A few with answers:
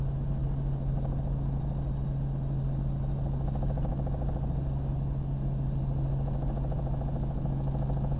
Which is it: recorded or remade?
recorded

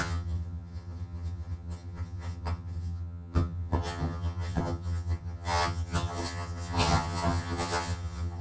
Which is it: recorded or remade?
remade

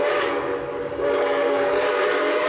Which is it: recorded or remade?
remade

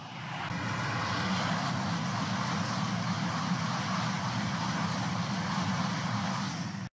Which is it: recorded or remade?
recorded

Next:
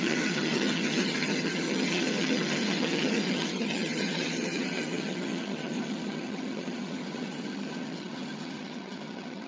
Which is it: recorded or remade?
remade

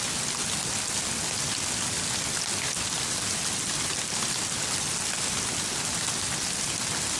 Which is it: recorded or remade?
recorded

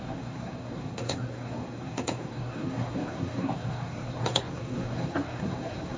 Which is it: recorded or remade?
remade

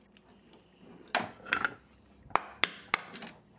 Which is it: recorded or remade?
recorded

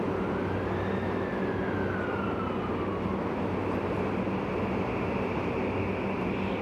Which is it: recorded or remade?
recorded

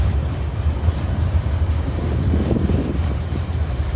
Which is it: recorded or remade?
remade